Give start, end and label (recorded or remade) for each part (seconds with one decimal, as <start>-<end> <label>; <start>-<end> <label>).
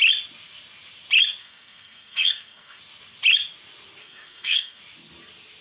0.0-1.4 recorded; 1.4-2.8 remade; 2.8-4.0 recorded; 4.0-4.8 remade; 4.8-5.6 recorded